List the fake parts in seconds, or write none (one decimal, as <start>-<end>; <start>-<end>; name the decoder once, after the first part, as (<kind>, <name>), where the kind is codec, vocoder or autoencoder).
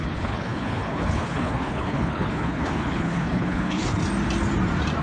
0.0-4.0 (codec, HILCodec)